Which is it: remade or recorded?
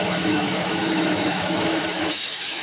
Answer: remade